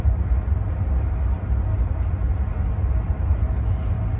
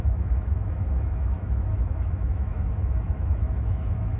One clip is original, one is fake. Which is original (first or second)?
first